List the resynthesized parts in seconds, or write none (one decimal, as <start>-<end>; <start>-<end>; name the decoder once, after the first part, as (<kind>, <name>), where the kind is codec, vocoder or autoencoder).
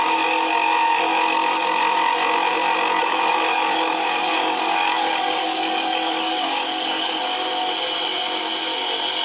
3.0-7.2 (codec, DAC)